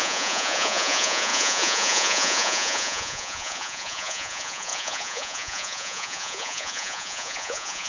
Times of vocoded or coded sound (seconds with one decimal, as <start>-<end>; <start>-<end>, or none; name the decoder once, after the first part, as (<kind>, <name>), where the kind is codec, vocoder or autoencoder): 0.0-7.9 (vocoder, Vocos)